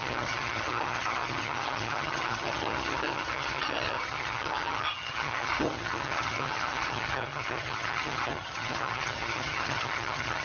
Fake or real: fake